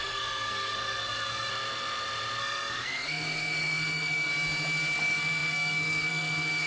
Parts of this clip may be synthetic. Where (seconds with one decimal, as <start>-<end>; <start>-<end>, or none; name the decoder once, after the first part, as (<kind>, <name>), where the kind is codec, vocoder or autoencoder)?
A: 0.0-1.5 (codec, SNAC); 2.4-4.3; 5.0-6.7